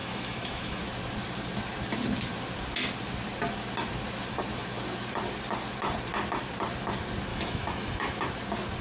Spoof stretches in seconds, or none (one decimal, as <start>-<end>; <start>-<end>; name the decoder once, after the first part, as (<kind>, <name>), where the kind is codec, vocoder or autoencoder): 0.0-0.8 (autoencoder, DAC-VAE); 7.3-8.2